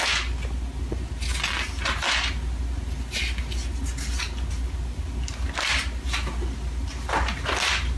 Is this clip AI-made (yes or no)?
no